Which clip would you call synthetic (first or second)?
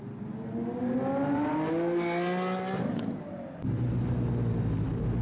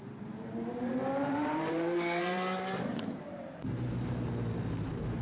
second